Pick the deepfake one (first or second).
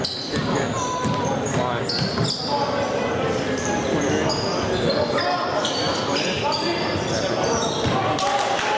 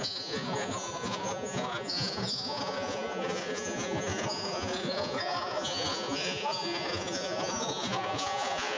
second